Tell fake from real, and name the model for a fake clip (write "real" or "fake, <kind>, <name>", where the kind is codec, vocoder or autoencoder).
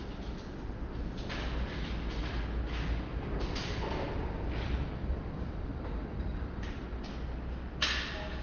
real